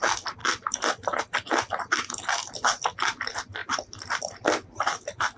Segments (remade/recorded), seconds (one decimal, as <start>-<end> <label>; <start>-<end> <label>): 0.0-5.4 recorded